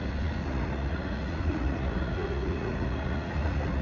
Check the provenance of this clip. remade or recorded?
remade